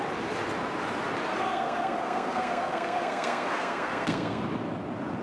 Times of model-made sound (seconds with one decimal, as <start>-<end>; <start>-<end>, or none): 1.3-4.4